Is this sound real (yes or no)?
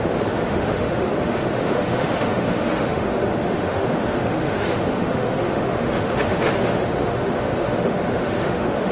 no